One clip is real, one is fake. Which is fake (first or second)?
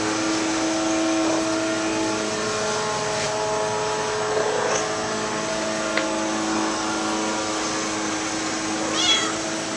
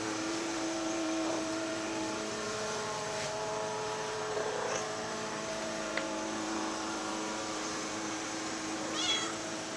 second